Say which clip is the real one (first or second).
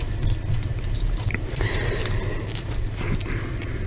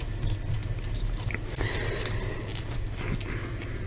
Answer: second